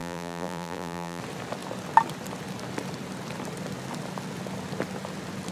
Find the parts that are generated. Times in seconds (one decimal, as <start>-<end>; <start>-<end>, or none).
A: 0.0-1.2